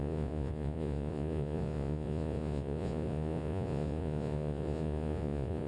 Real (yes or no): no